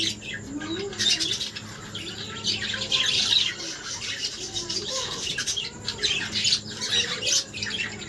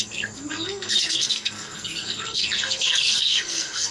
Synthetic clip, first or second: second